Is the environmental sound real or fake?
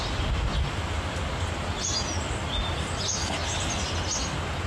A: real